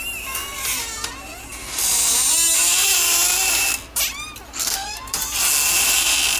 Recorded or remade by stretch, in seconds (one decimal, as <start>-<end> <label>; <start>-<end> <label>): 0.0-4.5 recorded; 4.5-5.0 remade; 5.0-6.4 recorded

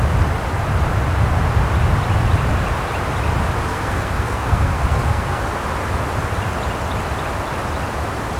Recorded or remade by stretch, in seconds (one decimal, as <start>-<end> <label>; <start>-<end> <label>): 0.0-3.7 recorded; 3.7-5.4 remade; 5.4-8.4 recorded

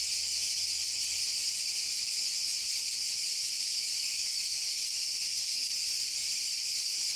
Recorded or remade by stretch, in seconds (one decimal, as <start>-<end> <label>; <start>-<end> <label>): 0.0-4.0 recorded; 4.0-5.7 remade; 5.7-7.2 recorded

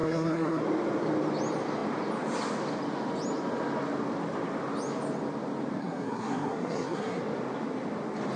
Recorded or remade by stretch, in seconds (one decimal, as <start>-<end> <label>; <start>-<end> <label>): 0.0-0.6 remade; 0.6-5.8 recorded; 5.8-7.2 remade; 7.2-8.4 recorded

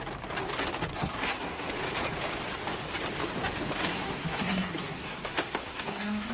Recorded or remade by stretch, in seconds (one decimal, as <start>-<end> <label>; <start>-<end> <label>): 0.0-0.9 recorded; 0.9-1.7 remade; 1.7-3.9 recorded; 3.9-6.3 remade